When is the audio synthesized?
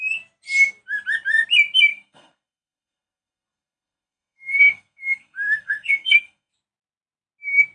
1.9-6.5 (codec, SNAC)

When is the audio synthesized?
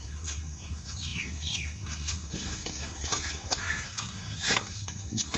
0.0-5.4 (codec, SNAC)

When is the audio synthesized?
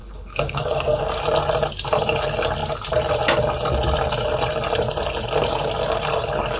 0.0-1.0 (codec, SNAC)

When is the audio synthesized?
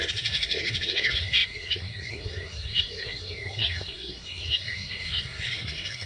0.0-6.1 (codec, SNAC)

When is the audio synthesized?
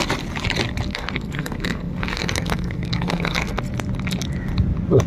0.9-3.6 (codec, SNAC)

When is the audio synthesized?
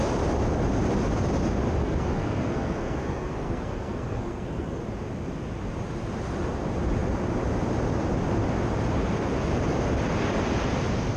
1.8-4.8 (codec, SNAC)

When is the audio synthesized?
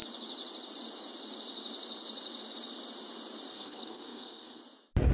3.5-4.6 (codec, SNAC)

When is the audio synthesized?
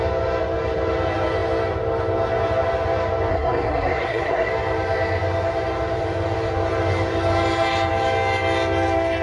3.3-4.5 (codec, SNAC)